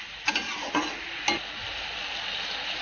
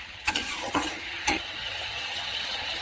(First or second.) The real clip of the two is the first